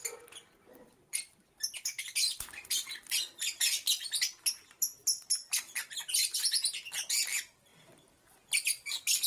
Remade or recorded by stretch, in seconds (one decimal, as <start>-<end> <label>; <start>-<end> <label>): 0.0-9.3 recorded